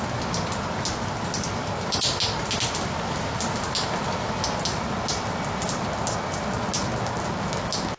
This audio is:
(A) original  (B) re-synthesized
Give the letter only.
A